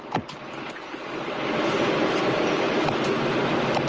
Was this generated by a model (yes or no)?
no